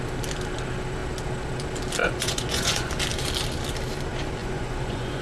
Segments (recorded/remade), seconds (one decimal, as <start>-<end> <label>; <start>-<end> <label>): 0.0-2.0 recorded; 2.0-2.9 remade; 2.9-4.4 recorded; 4.4-5.2 remade